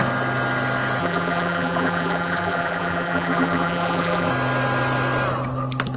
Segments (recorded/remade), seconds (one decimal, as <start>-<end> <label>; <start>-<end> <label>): 0.0-1.0 recorded; 1.0-4.3 remade; 4.3-6.0 recorded